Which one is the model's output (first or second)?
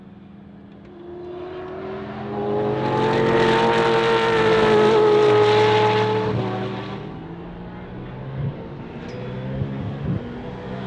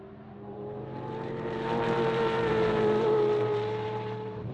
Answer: second